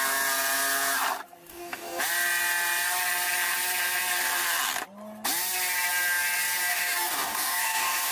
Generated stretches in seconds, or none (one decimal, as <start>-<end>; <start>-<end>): 1.5-2.0; 6.7-8.1